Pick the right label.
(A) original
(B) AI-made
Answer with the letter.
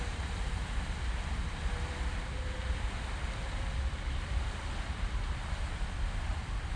B